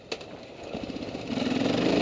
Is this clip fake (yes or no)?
yes